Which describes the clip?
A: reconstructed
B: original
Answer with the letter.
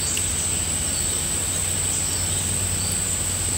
B